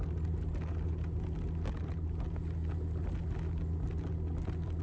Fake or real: real